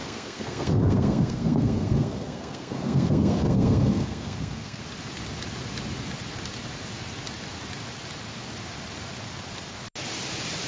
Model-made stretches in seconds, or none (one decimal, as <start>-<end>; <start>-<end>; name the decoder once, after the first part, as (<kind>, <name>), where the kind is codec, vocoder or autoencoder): 0.0-4.8 (codec, SNAC)